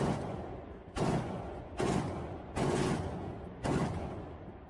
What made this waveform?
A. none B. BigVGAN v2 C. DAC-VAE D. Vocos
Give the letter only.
D